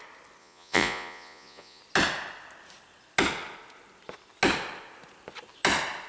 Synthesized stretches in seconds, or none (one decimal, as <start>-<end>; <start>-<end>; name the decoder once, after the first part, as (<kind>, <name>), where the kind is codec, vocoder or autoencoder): 0.4-1.8 (vocoder, Vocos)